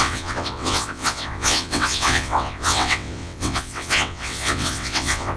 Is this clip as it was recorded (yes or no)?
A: no